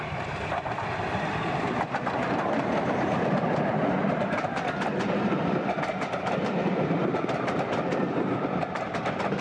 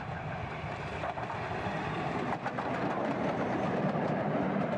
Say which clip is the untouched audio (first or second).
second